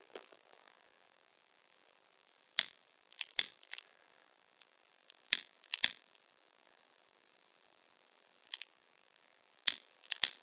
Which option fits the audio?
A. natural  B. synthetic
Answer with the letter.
B